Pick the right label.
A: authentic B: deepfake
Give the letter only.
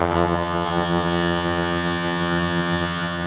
B